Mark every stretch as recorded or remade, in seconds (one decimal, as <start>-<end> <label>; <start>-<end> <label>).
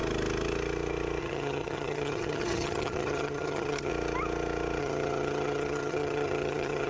0.0-1.2 recorded; 1.2-3.9 remade; 3.9-4.8 recorded; 4.8-6.9 remade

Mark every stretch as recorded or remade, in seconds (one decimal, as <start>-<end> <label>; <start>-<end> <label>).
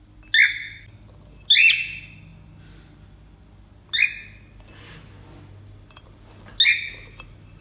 0.0-7.6 recorded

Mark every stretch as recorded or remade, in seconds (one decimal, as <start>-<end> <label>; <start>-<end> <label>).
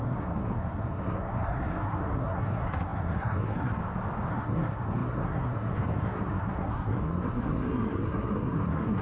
0.0-3.8 remade; 3.8-4.3 recorded; 4.3-9.0 remade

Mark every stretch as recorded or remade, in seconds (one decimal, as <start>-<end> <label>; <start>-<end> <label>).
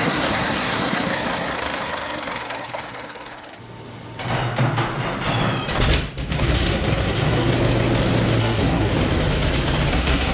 0.0-3.5 remade; 3.5-6.3 recorded; 6.3-7.5 remade; 7.5-8.4 recorded; 8.4-8.9 remade; 8.9-9.9 recorded; 9.9-10.3 remade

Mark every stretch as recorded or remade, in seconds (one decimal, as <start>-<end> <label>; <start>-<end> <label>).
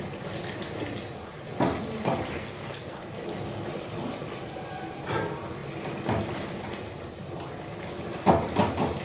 0.0-2.4 recorded; 2.4-3.0 remade; 3.0-9.0 recorded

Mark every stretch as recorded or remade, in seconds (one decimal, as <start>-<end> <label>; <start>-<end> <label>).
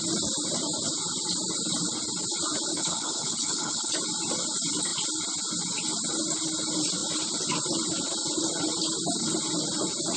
0.0-2.7 recorded; 2.7-3.9 remade; 3.9-10.2 recorded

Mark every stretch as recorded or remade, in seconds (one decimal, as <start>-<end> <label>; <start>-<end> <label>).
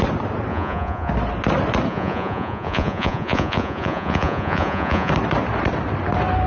0.0-0.5 recorded; 0.5-1.1 remade; 1.1-1.9 recorded; 1.9-5.1 remade; 5.1-6.5 recorded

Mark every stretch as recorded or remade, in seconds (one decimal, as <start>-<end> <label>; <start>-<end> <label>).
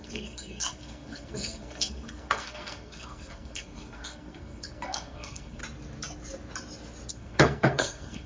0.0-5.6 remade; 5.6-7.1 recorded; 7.1-8.3 remade